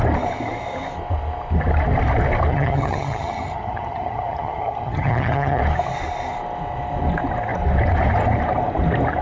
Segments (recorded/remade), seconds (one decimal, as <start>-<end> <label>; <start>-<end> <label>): 0.0-2.5 recorded; 2.5-5.6 remade; 5.6-9.2 recorded